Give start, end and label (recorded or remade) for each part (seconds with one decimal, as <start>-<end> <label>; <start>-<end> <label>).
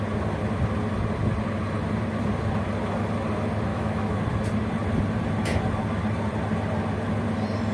0.0-3.7 recorded; 3.7-4.2 remade; 4.2-7.7 recorded